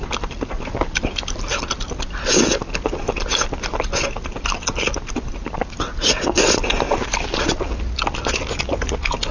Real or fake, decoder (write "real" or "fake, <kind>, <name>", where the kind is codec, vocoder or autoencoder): real